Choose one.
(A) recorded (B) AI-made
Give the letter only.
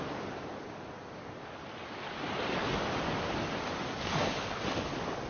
A